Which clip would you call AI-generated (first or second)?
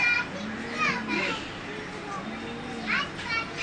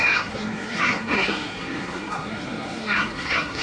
second